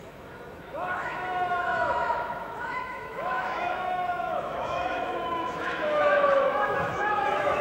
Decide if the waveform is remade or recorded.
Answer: remade